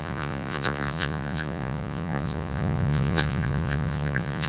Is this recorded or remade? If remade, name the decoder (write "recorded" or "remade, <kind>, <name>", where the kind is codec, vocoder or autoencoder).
remade, vocoder, Vocos